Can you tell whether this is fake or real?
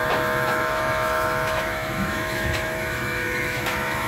fake